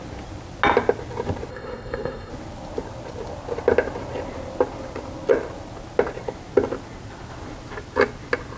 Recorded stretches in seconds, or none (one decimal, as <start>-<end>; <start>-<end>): 0.0-1.5; 2.3-8.6